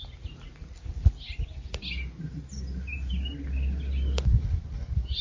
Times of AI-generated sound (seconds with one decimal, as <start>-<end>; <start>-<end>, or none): none